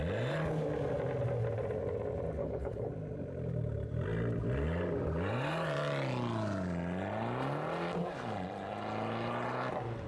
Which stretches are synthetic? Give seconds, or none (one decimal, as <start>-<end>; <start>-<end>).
2.4-2.9